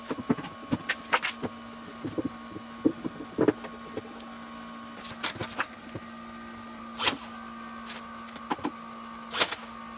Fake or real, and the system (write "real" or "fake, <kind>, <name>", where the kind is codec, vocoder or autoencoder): real